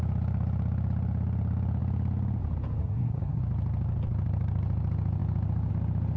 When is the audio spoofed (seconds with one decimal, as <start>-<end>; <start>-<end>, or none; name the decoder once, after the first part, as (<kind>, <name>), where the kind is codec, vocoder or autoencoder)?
2.8-3.4 (codec, SNAC)